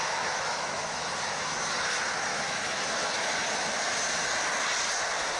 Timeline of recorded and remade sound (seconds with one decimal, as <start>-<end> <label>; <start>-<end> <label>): 0.0-1.1 remade; 1.1-2.3 recorded; 2.3-2.8 remade; 2.8-5.4 recorded